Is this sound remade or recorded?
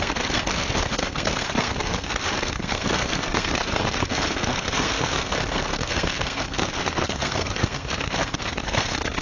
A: remade